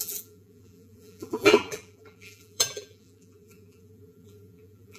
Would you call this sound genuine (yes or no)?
no